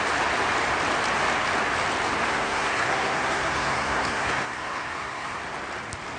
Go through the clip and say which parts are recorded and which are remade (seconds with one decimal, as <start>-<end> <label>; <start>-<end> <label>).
0.0-2.3 recorded; 2.3-5.4 remade; 5.4-6.2 recorded